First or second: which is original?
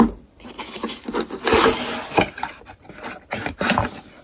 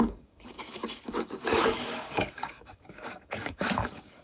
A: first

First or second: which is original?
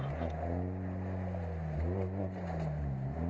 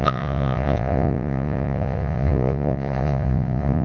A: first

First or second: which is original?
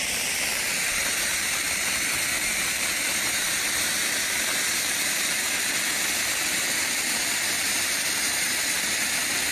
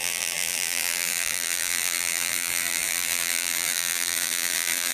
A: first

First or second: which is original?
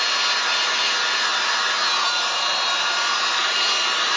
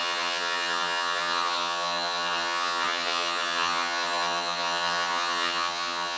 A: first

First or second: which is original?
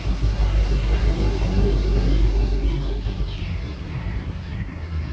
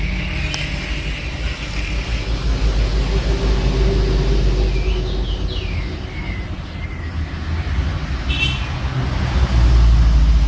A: second